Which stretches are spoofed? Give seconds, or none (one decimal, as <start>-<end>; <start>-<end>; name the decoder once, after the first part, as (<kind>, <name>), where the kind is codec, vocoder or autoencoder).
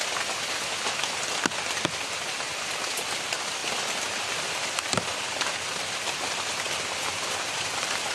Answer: none